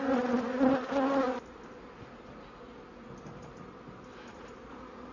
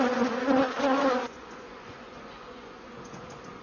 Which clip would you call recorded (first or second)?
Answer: first